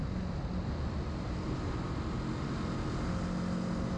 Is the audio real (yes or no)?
yes